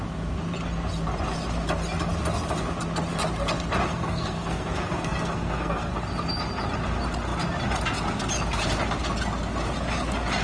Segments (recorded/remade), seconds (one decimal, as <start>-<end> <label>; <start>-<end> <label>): 0.0-3.9 recorded; 3.9-5.9 remade; 5.9-10.4 recorded